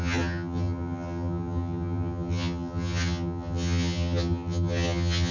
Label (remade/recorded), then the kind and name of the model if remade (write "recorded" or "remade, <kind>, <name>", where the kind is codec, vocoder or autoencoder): remade, vocoder, HiFi-GAN